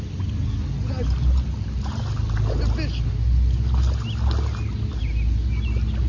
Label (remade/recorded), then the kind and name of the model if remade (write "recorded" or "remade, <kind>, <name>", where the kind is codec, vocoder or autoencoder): recorded